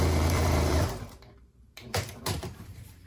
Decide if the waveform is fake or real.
fake